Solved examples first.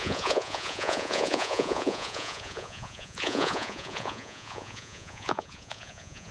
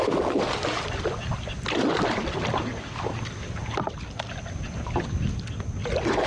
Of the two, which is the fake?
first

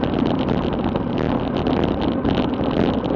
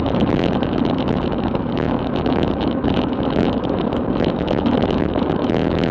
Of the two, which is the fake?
second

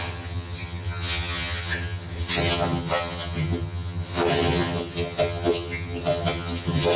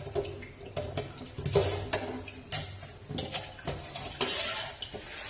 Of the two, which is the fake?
first